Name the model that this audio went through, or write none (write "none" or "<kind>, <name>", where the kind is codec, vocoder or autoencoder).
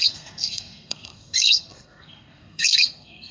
codec, SNAC